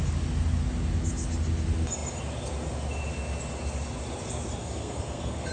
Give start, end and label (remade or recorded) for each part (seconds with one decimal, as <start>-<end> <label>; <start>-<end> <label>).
0.0-4.6 recorded; 4.6-5.5 remade